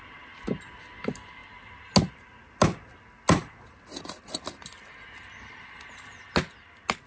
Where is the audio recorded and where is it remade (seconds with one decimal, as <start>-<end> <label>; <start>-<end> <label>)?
0.0-7.1 recorded